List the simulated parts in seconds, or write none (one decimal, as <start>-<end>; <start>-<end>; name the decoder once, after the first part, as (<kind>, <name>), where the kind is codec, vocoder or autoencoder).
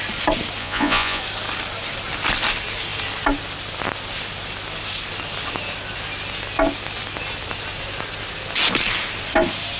0.6-1.2 (vocoder, Vocos)